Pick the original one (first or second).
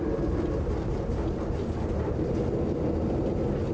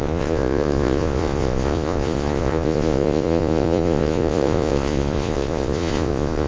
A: first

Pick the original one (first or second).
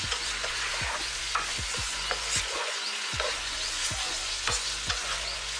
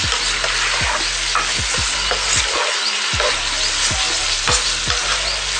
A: second